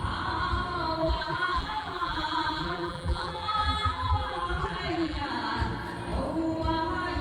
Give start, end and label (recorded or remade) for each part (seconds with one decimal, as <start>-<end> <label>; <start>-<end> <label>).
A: 0.0-1.0 recorded; 1.0-5.3 remade; 5.3-7.2 recorded